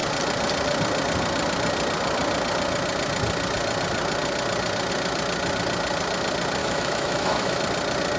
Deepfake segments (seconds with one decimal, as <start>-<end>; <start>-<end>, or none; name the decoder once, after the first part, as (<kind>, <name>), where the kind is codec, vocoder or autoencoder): 6.6-7.6 (autoencoder, DAC-VAE)